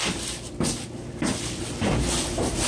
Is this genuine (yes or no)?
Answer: yes